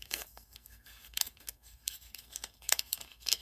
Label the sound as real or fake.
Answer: fake